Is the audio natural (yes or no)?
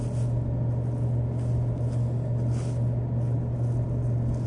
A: yes